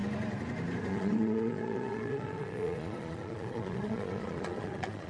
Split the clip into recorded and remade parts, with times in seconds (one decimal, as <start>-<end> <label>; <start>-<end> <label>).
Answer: 0.0-0.9 recorded; 0.9-5.1 remade